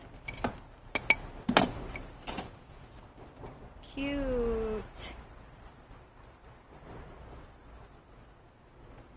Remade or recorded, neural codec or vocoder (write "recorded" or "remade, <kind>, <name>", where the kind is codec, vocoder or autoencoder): recorded